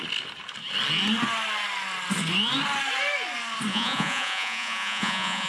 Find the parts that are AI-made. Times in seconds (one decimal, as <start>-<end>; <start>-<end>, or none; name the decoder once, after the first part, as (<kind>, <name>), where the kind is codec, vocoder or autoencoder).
3.7-5.5 (vocoder, Vocos)

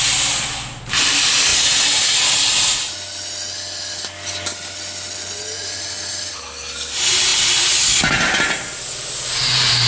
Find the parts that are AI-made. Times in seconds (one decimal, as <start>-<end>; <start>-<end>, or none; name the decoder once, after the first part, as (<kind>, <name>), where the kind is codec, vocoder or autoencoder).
none

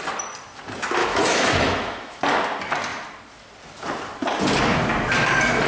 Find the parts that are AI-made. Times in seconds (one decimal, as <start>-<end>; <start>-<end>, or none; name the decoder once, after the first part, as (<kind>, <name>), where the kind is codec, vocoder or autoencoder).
1.0-2.2 (autoencoder, DAC-VAE)

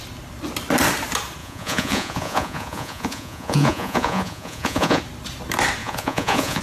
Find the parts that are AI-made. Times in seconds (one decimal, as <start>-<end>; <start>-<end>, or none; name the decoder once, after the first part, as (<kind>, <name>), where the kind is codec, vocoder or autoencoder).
1.4-5.0 (vocoder, Vocos); 5.8-6.6